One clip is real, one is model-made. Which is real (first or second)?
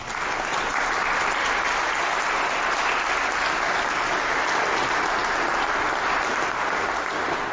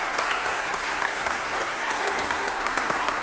first